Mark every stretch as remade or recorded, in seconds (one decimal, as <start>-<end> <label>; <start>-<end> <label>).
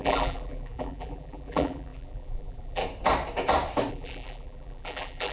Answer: 0.0-2.8 remade; 2.8-3.9 recorded; 3.9-5.3 remade